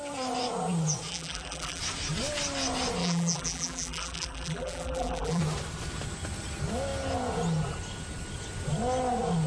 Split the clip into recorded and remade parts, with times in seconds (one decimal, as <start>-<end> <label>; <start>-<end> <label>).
0.0-1.1 recorded; 1.1-1.8 remade; 1.8-3.0 recorded; 3.0-5.4 remade; 5.4-9.5 recorded